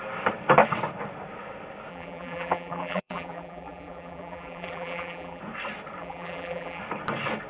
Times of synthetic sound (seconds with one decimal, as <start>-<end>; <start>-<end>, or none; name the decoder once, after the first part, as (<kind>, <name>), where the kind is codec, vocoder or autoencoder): 1.9-5.4 (vocoder, BigVGAN v2); 6.0-6.8